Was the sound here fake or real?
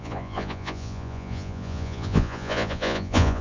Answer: fake